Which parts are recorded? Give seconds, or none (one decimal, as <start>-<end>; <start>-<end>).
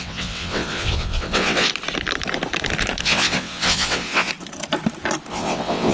1.7-3.0; 4.3-5.3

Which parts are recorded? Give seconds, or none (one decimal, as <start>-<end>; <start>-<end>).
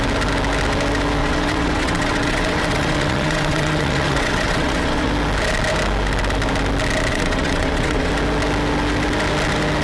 0.0-1.2; 5.1-7.1; 8.1-9.8